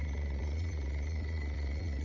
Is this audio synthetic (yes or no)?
yes